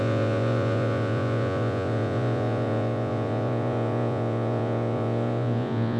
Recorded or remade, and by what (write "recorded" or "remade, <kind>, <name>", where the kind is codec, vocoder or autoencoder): remade, vocoder, Vocos